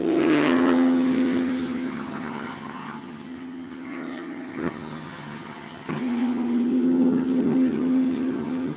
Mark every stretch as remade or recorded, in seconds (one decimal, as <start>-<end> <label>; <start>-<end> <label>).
0.0-8.8 remade